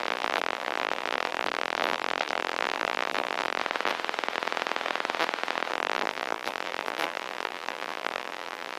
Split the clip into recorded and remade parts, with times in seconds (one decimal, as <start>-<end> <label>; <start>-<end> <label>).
0.0-3.6 remade; 3.6-5.7 recorded; 5.7-8.8 remade